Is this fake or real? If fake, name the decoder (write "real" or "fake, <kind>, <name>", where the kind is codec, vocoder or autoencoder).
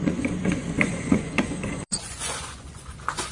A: fake, vocoder, Vocos